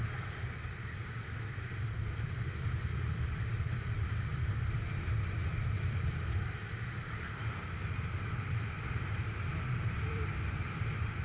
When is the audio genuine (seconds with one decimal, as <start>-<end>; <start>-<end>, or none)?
4.3-4.9